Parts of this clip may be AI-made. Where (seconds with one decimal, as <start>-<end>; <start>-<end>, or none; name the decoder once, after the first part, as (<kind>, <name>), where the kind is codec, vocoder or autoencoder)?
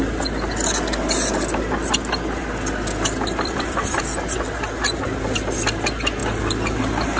2.4-4.0 (vocoder, BigVGAN v2)